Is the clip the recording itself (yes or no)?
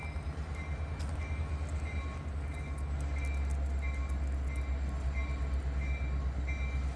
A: yes